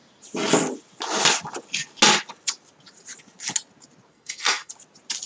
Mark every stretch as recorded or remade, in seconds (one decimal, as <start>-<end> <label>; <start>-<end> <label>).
0.0-4.1 recorded; 4.1-4.7 remade; 4.7-5.3 recorded